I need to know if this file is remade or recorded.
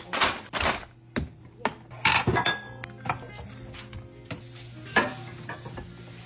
recorded